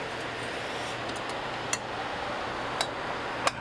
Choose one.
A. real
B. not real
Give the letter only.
A